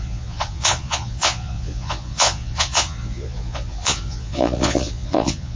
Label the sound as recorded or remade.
remade